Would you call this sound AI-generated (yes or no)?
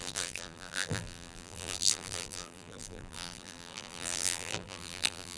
yes